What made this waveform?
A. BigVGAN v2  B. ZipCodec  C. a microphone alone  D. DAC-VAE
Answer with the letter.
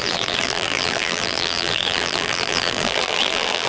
A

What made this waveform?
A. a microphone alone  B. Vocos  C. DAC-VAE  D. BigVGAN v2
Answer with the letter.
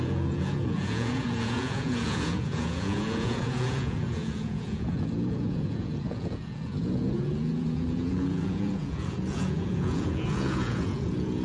B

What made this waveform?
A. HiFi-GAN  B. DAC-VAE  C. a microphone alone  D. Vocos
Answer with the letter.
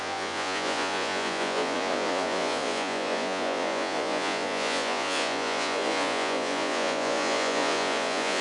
D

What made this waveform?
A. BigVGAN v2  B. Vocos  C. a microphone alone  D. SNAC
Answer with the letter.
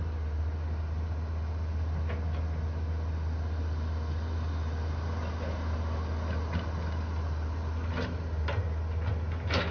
C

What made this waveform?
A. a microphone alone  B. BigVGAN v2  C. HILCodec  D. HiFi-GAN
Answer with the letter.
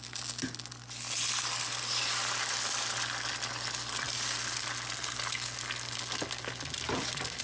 A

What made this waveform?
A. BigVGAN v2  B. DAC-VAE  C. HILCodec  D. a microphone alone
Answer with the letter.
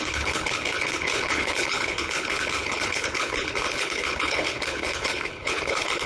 C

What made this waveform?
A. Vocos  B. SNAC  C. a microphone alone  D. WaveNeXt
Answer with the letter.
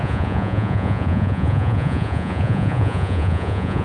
A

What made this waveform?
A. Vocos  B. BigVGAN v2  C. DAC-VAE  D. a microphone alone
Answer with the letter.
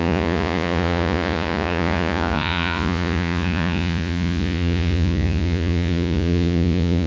A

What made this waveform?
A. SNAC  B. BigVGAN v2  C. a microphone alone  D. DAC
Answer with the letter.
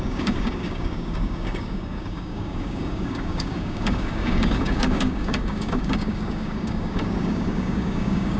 D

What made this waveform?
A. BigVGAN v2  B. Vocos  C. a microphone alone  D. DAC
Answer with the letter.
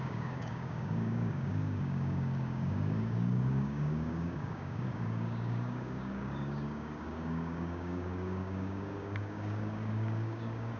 D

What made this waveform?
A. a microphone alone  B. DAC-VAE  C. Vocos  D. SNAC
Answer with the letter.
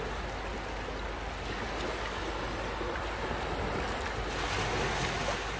A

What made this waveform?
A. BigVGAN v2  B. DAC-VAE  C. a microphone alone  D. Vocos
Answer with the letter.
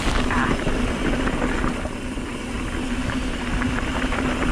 C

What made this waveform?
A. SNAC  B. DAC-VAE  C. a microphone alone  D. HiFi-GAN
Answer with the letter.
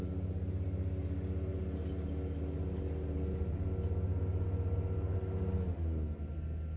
C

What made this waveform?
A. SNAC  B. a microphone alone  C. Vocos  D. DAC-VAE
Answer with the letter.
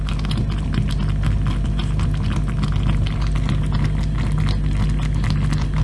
B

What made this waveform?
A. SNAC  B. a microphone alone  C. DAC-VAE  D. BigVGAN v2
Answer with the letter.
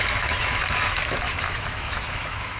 C